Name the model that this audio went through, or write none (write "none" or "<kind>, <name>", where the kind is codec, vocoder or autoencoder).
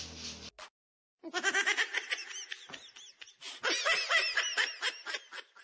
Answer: none